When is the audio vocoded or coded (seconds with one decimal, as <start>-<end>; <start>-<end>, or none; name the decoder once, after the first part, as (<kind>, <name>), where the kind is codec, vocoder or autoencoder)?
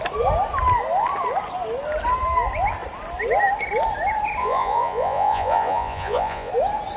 4.4-6.5 (vocoder, Vocos)